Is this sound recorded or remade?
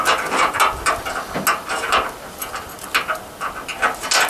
recorded